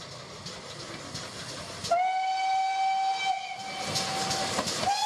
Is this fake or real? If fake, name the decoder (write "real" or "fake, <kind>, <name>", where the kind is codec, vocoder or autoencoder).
real